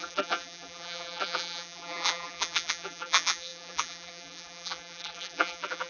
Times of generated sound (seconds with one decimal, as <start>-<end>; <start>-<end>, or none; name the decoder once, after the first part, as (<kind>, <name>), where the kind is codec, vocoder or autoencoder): 0.0-5.9 (vocoder, BigVGAN v2)